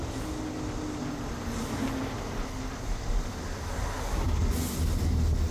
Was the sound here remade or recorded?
recorded